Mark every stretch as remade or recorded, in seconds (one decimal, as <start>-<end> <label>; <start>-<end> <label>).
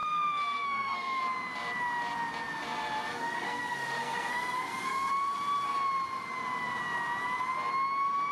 0.0-1.2 remade; 1.2-3.1 recorded; 3.1-5.1 remade; 5.1-8.3 recorded